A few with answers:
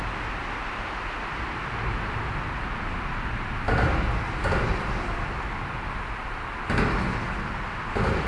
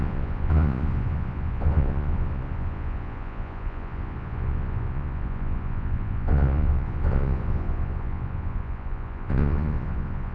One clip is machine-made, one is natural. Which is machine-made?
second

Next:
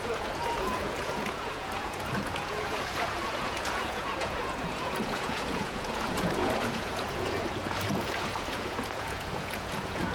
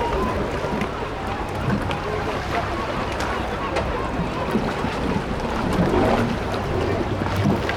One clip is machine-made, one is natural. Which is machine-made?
first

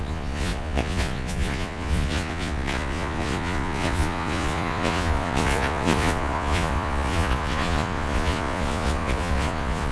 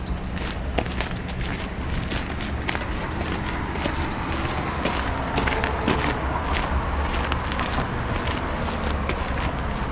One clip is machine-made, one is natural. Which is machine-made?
first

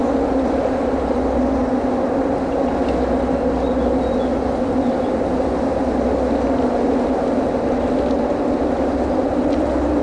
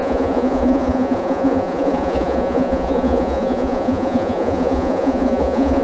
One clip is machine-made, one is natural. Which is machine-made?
second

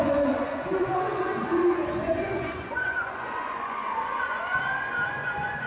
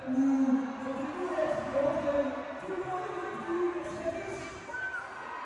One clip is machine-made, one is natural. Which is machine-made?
first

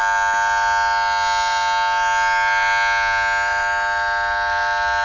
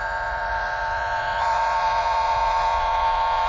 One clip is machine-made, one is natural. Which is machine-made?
second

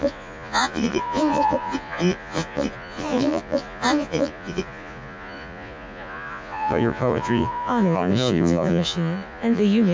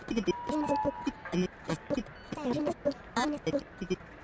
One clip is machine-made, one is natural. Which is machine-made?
first